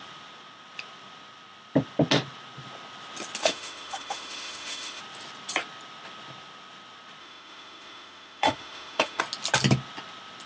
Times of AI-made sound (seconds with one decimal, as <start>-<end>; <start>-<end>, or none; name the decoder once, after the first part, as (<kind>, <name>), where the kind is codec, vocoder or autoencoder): 3.4-5.0 (autoencoder, DAC-VAE); 7.2-9.2